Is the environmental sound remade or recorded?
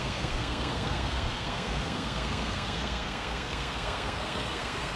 remade